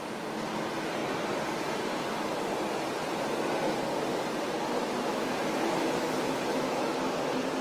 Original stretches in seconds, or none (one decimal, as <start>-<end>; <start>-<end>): 0.0-5.1; 6.9-7.6